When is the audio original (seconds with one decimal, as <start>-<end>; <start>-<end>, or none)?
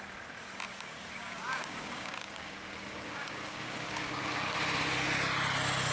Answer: 0.0-0.7; 4.2-5.9